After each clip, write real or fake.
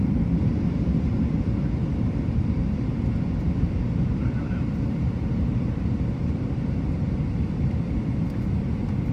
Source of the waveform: fake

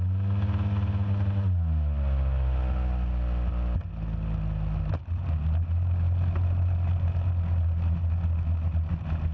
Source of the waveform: real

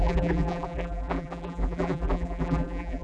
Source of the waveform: fake